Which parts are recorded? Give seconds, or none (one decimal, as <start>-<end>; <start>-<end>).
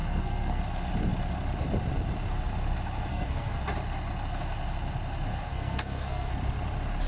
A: 0.6-3.1; 3.6-5.3; 6.3-7.1